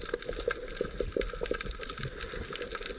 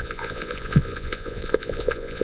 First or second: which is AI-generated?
second